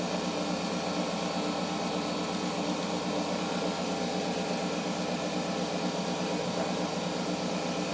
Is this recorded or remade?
recorded